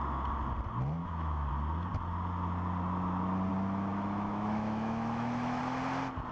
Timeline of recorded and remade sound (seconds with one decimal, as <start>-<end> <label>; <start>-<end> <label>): 0.0-1.0 recorded; 1.0-1.5 remade; 1.5-3.9 recorded; 3.9-5.6 remade; 5.6-6.3 recorded